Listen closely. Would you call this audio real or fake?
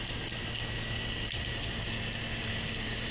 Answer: real